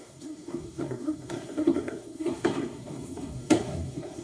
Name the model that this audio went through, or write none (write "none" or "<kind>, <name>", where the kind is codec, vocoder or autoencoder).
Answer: codec, SNAC